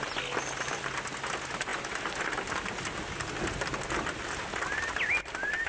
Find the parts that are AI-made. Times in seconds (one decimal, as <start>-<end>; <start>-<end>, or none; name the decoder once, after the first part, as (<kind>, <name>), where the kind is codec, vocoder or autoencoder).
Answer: none